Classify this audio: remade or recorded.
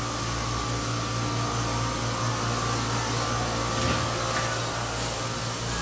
recorded